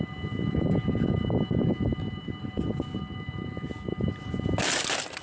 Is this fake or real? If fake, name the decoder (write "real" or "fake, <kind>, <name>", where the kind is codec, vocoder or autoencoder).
real